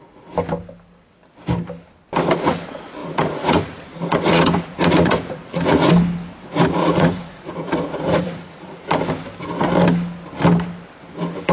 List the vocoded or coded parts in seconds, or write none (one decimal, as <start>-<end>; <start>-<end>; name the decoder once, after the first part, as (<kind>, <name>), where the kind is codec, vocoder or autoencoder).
3.0-5.9 (vocoder, Vocos); 6.8-9.0